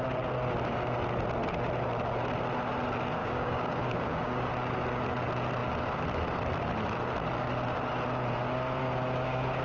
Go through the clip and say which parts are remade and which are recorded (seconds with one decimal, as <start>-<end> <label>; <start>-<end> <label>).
0.0-3.2 recorded; 3.2-4.5 remade; 4.5-9.6 recorded

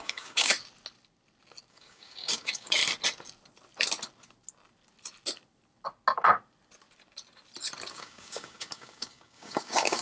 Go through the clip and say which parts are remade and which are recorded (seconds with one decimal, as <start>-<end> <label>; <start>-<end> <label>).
0.0-0.5 remade; 0.5-1.7 recorded; 1.7-2.8 remade; 2.8-7.9 recorded; 7.9-10.0 remade

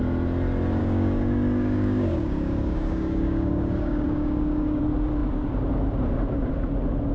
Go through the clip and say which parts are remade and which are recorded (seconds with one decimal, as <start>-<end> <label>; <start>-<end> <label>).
0.0-0.8 recorded; 0.8-4.8 remade; 4.8-7.1 recorded